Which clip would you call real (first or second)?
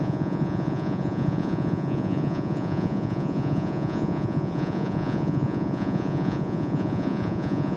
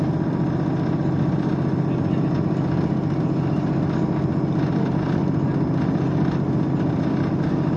second